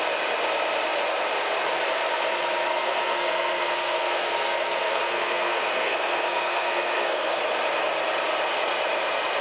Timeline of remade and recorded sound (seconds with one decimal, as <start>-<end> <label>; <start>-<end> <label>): 0.0-2.7 recorded; 2.7-7.4 remade; 7.4-9.4 recorded